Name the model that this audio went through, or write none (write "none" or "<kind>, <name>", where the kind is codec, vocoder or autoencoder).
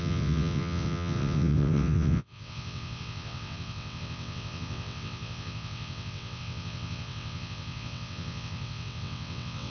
vocoder, WaveNeXt